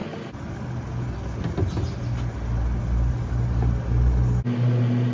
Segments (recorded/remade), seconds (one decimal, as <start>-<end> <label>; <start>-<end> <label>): 0.0-5.1 recorded